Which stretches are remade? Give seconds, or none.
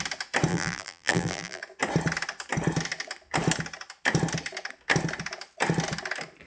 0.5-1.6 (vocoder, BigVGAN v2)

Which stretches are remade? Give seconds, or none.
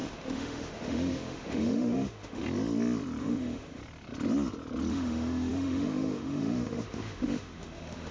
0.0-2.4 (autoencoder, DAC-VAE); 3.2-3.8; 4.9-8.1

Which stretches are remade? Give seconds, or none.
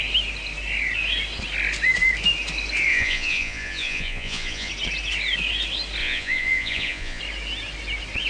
2.9-4.7 (vocoder, Vocos); 6.0-7.2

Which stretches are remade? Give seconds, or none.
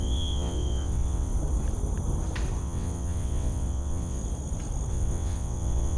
0.0-1.3 (vocoder, WaveNeXt); 2.6-4.2; 4.9-6.0